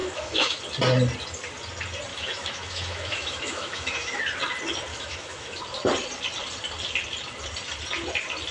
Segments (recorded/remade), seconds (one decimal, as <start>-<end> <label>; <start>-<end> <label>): 0.0-0.6 remade; 0.6-2.1 recorded; 2.1-4.2 remade; 4.2-4.9 recorded; 4.9-5.6 remade; 5.6-8.5 recorded